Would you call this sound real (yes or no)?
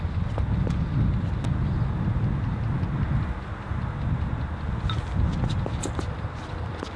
yes